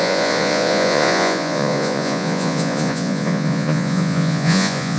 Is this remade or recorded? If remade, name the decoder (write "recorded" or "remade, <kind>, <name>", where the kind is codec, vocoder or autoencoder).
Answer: remade, vocoder, Vocos